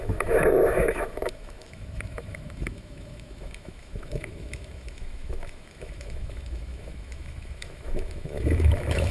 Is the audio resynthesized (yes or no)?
yes